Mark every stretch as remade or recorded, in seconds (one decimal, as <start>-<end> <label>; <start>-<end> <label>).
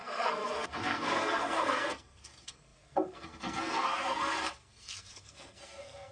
0.0-6.1 remade